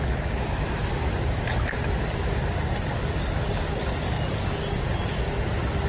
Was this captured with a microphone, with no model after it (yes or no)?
yes